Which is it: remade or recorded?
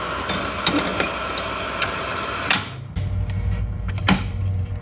recorded